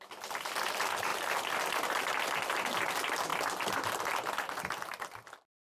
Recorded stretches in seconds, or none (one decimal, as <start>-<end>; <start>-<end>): 0.0-5.7